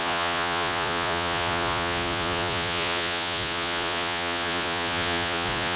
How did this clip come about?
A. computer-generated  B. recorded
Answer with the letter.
A